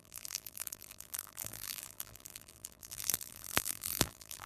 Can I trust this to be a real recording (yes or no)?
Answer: no